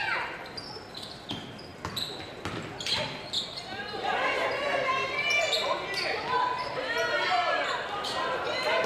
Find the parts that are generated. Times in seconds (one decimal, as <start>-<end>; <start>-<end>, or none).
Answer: none